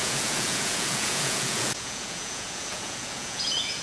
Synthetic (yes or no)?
yes